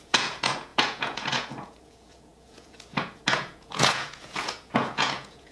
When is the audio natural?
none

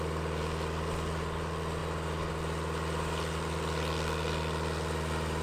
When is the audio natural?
0.0-5.4